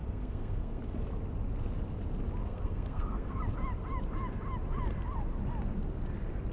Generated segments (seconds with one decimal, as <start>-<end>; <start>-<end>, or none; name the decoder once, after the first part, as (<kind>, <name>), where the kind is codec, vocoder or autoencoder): 0.0-0.8 (codec, SNAC); 2.4-3.4